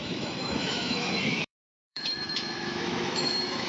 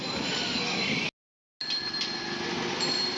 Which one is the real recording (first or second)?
second